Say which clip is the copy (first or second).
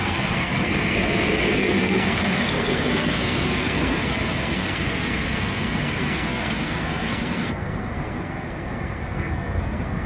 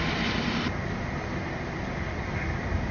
first